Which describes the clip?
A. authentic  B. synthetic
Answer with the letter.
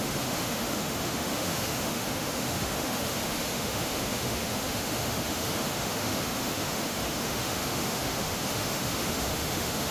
B